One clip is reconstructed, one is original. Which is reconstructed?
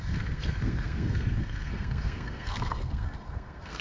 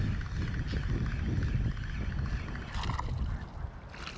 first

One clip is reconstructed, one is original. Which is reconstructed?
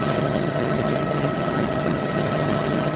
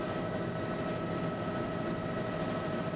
first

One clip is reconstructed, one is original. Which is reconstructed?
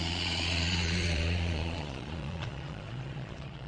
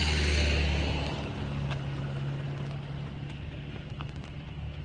first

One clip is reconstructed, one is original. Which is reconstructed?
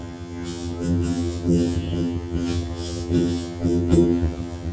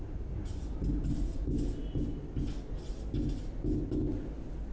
first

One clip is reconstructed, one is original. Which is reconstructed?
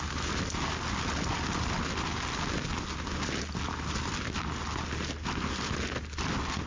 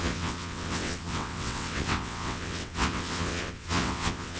second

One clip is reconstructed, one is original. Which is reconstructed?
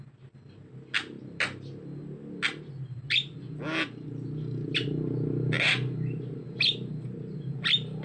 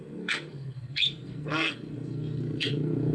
second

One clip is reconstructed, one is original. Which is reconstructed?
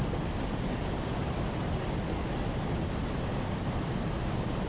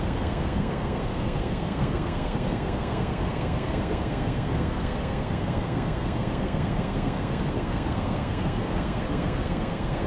second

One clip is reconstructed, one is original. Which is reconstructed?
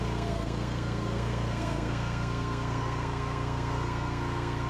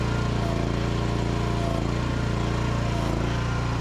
first